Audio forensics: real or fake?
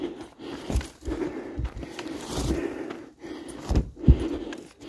real